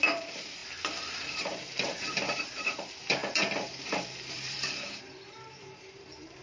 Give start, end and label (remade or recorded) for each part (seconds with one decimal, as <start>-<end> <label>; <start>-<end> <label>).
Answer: 0.0-0.6 remade; 0.6-1.2 recorded; 1.2-6.4 remade